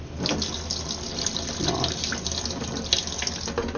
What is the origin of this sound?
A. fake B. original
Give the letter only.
B